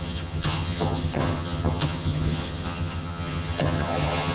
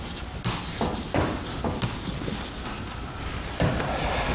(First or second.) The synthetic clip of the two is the first